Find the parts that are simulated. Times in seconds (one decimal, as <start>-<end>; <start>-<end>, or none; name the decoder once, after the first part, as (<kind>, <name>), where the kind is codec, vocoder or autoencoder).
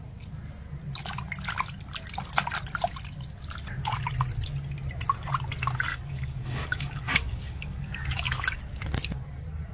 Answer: 5.9-8.6 (codec, DAC)